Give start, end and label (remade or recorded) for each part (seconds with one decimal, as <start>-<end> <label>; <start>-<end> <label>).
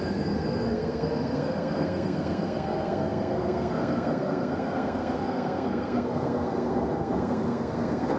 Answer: 0.0-8.2 remade